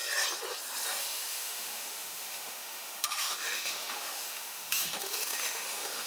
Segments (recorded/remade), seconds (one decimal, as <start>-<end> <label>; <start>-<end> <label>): 0.0-1.0 recorded; 1.0-6.1 remade